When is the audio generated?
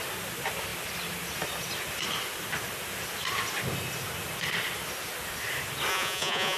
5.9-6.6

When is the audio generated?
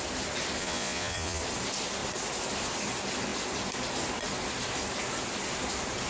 0.6-1.4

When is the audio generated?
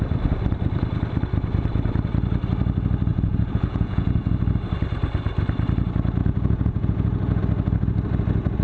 3.1-4.3; 6.2-7.4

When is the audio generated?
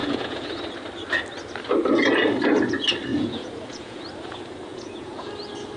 0.0-0.6; 3.1-4.0; 4.7-5.3